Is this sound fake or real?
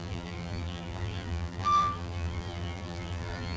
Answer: fake